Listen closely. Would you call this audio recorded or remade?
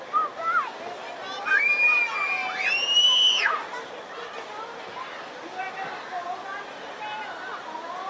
recorded